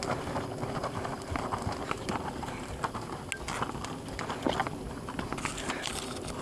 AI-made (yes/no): no